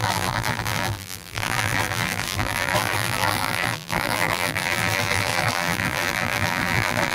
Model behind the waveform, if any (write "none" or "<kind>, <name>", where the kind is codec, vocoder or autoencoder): vocoder, BigVGAN v2